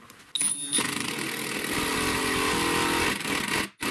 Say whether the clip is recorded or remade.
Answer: recorded